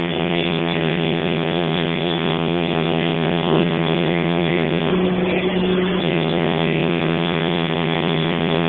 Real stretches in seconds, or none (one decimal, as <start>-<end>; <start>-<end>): 4.9-6.0